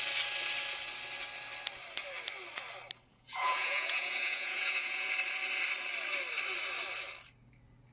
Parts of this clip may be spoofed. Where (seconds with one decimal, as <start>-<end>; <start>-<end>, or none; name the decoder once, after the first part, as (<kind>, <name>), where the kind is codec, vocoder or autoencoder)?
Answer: 3.1-5.1 (vocoder, Vocos)